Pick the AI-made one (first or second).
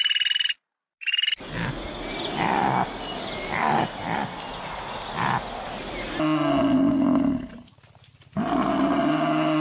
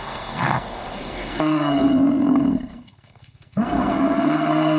second